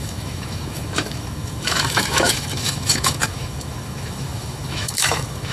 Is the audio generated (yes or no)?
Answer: yes